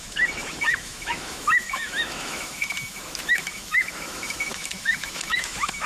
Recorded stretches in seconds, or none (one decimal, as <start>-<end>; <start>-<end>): none